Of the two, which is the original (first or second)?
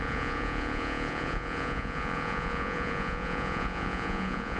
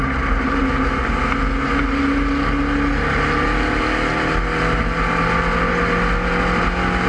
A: second